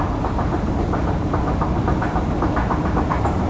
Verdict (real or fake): real